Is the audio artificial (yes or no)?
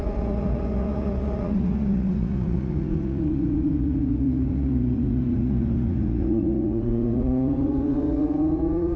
yes